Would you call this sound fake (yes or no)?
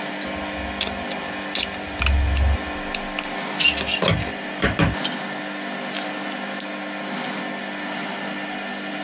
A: no